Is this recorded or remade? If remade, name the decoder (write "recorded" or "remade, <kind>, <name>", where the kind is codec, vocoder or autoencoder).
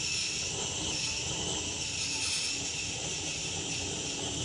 recorded